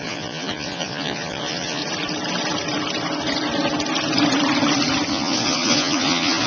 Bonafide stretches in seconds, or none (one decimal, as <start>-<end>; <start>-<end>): 1.8-5.1